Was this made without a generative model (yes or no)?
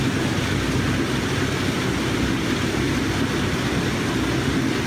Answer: yes